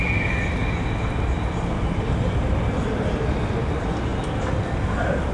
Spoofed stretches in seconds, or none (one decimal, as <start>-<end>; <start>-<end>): none